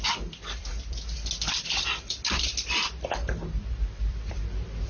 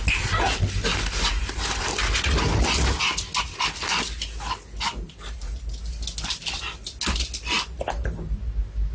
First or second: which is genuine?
second